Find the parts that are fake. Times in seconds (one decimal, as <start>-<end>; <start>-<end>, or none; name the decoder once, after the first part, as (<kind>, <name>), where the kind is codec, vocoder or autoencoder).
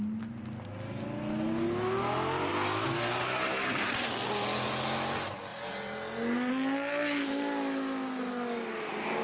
none